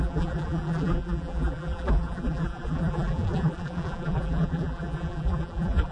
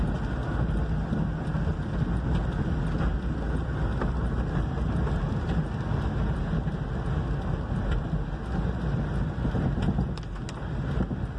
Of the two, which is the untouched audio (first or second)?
second